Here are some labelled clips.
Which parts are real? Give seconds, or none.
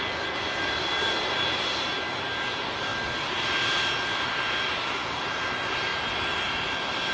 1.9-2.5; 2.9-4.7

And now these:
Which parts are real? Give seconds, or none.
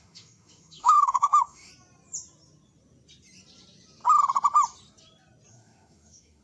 1.7-5.5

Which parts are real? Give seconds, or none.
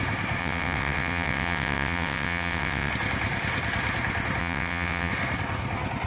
0.0-0.4; 2.9-4.4; 5.1-6.1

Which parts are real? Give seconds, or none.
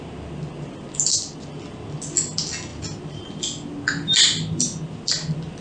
0.0-5.6